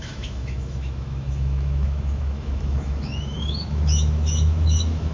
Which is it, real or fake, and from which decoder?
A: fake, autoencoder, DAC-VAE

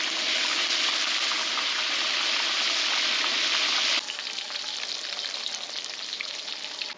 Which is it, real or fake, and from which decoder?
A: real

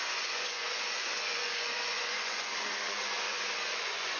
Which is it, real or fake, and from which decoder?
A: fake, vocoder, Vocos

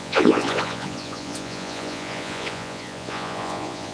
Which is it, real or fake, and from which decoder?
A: fake, vocoder, Vocos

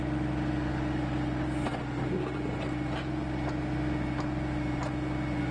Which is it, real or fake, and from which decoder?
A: real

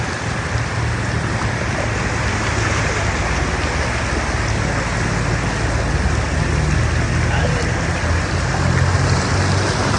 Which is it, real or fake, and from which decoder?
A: real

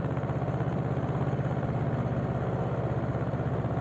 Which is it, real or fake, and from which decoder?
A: real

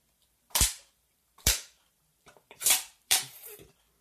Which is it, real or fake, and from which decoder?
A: fake, vocoder, BigVGAN v2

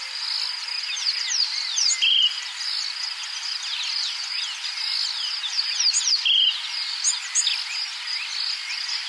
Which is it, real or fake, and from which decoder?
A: real